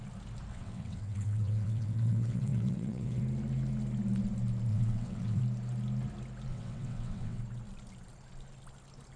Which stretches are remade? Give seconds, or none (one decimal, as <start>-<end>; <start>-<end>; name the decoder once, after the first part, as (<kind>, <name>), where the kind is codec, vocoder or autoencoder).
0.5-3.2 (vocoder, WaveNeXt); 4.7-5.4; 6.5-7.4